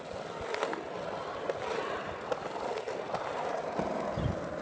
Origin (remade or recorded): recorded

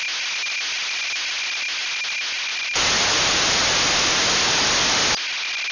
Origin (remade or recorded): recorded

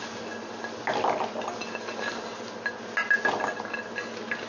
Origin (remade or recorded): recorded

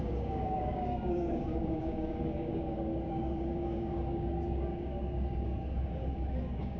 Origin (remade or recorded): remade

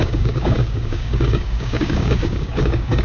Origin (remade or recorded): remade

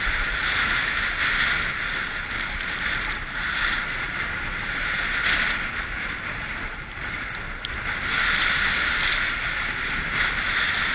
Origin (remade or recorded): recorded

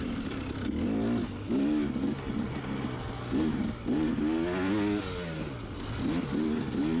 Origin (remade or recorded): recorded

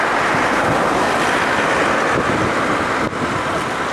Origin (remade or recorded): recorded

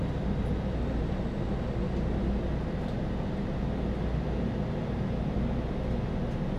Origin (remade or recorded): recorded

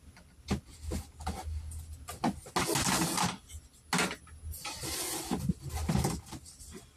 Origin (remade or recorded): recorded